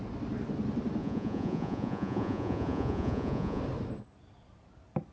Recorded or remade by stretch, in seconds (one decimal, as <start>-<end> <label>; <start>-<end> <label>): 0.0-1.0 recorded; 1.0-3.6 remade; 3.6-5.1 recorded